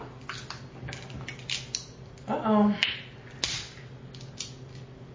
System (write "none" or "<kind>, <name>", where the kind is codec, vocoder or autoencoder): none